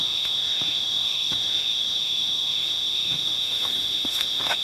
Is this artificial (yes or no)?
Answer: yes